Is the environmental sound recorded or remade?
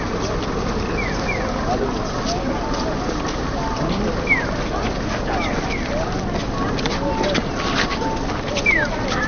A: recorded